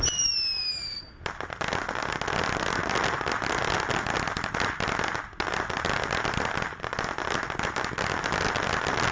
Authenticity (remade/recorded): recorded